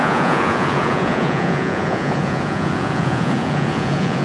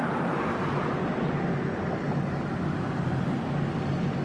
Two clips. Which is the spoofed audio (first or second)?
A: first